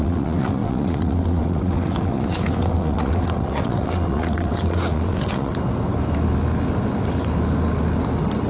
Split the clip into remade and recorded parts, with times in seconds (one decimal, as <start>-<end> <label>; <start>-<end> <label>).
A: 0.0-5.5 remade; 5.5-8.5 recorded